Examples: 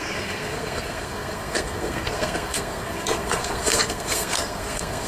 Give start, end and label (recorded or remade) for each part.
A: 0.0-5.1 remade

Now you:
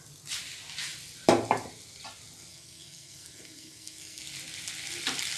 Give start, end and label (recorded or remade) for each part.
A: 0.0-2.5 recorded; 2.5-4.2 remade; 4.2-5.4 recorded

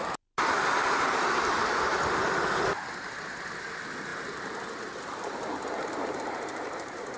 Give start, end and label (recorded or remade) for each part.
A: 0.0-7.2 recorded